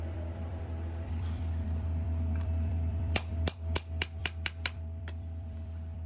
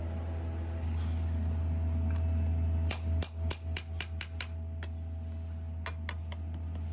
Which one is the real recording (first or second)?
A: second